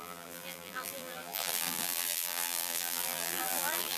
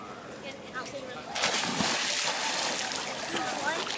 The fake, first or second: first